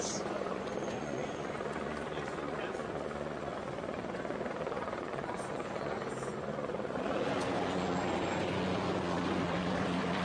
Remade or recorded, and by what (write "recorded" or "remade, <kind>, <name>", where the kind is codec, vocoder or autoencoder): remade, vocoder, Vocos